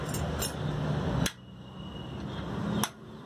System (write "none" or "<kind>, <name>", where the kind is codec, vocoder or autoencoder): none